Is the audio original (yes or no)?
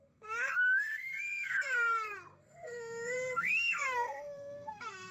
no